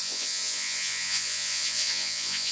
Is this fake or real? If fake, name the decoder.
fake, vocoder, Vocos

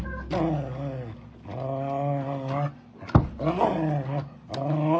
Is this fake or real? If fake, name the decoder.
real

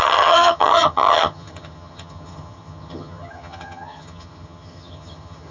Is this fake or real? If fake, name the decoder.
fake, vocoder, HiFi-GAN